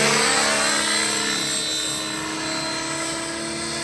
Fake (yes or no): no